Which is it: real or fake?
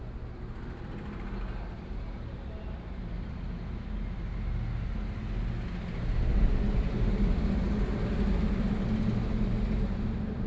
real